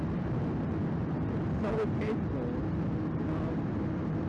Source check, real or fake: real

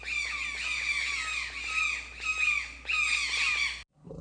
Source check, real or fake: real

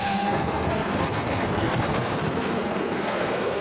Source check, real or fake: fake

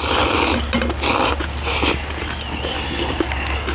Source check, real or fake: real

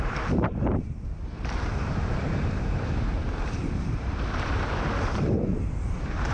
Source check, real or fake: fake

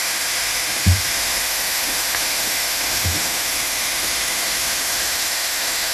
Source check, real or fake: fake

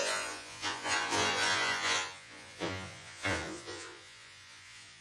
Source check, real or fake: fake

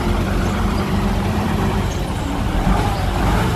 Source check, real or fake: fake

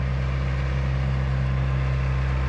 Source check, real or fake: real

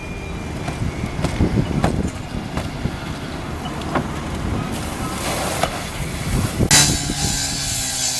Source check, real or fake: real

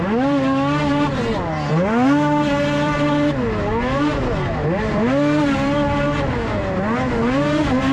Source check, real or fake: real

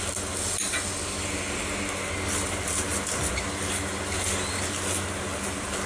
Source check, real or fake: real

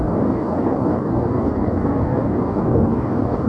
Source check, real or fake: fake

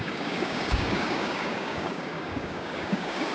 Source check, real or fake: fake